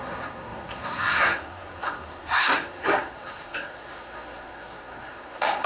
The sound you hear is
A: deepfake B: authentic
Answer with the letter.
A